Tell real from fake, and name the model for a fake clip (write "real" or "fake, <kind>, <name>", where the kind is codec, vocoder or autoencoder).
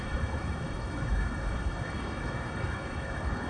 fake, autoencoder, DAC-VAE